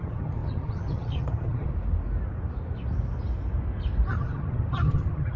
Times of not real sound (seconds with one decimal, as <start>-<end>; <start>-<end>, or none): 0.0-1.7; 4.1-5.4